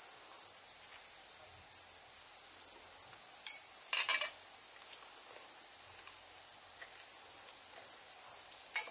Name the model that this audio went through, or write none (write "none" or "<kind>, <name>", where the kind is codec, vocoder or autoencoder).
none